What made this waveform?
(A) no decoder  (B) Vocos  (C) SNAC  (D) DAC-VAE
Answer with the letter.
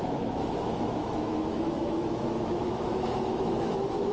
D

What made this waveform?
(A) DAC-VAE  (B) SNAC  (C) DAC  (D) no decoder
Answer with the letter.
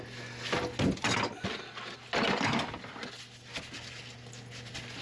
D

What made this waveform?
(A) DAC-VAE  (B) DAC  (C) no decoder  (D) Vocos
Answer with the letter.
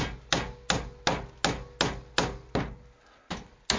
C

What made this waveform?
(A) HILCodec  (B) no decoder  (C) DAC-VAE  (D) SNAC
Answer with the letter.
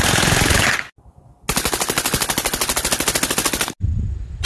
B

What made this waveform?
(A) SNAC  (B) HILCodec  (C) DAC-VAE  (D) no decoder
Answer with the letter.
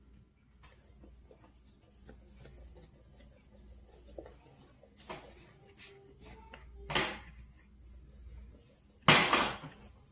D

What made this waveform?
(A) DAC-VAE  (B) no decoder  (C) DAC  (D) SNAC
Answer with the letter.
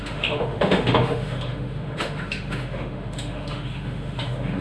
A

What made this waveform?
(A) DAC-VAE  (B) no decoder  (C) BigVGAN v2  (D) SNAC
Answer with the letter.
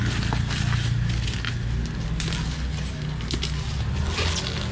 B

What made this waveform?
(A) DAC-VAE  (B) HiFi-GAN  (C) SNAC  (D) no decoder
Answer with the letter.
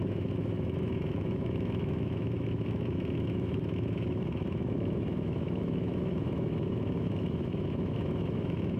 A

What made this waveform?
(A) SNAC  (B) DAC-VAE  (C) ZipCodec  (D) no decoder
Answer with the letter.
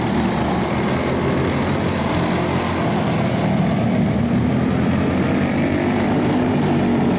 D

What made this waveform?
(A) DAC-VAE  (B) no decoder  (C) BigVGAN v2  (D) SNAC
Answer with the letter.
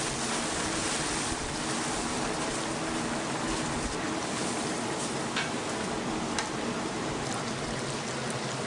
B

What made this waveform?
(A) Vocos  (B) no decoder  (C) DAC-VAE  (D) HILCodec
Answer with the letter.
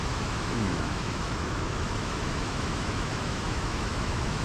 C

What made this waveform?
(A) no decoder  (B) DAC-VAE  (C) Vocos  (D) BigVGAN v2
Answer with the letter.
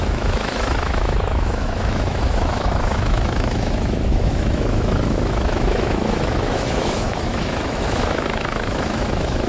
B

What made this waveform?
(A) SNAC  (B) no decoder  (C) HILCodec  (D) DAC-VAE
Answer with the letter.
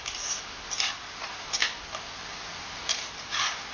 B